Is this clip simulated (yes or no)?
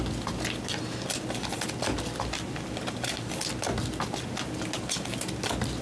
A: no